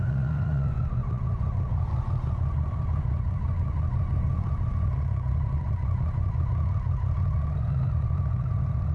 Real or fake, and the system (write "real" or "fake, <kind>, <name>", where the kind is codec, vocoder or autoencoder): fake, vocoder, Vocos